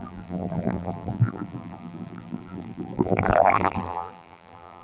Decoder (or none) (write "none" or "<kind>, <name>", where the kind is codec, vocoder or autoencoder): vocoder, BigVGAN v2